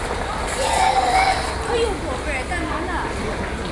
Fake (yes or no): no